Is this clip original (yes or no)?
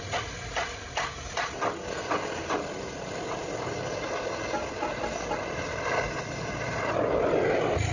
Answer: yes